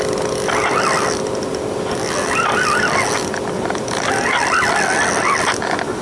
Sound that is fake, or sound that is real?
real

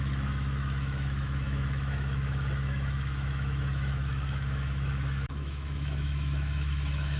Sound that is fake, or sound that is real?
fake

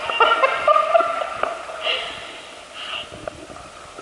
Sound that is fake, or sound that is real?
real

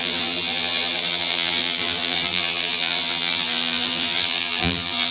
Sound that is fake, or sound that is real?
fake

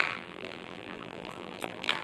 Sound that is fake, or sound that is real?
fake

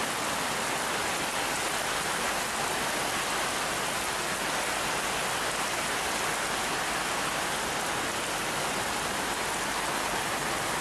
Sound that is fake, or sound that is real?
real